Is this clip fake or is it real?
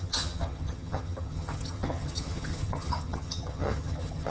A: fake